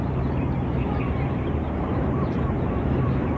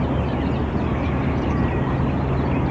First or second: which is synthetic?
first